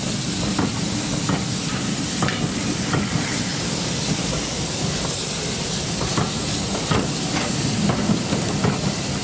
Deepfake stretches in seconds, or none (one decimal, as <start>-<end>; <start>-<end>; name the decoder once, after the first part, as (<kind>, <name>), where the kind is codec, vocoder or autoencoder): none